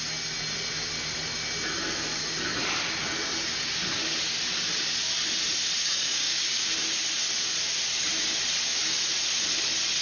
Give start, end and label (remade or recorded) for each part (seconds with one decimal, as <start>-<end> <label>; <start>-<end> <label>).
0.0-5.8 recorded; 5.8-6.7 remade; 6.7-10.0 recorded